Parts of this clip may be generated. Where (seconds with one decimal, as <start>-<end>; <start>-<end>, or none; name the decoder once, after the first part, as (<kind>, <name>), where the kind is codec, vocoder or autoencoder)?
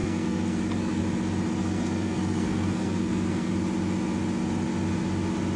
0.0-1.0 (codec, SNAC); 1.6-3.5